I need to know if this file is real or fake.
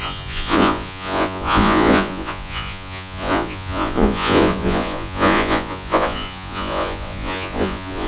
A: fake